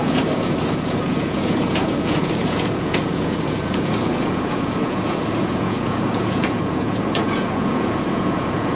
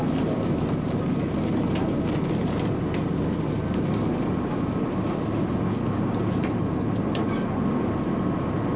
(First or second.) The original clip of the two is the second